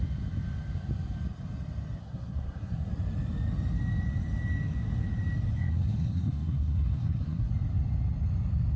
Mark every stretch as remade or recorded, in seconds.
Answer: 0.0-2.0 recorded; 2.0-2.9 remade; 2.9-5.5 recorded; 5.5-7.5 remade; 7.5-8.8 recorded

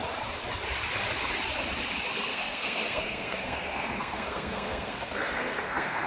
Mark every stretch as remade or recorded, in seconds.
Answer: 0.0-2.3 recorded; 2.3-6.1 remade